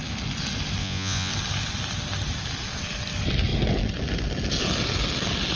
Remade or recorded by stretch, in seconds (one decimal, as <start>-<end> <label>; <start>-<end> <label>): 0.0-0.8 recorded; 0.8-1.3 remade; 1.3-5.6 recorded